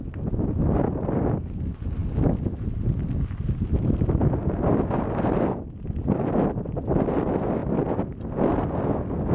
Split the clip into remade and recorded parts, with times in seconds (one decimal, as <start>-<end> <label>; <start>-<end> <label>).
0.0-9.3 recorded